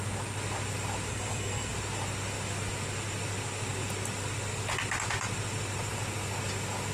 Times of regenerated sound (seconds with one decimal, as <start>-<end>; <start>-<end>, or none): 1.1-1.7